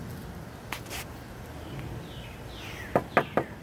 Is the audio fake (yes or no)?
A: no